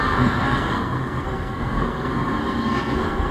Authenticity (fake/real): fake